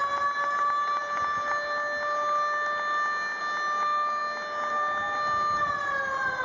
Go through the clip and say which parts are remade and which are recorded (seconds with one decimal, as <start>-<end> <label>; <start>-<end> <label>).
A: 0.0-6.4 recorded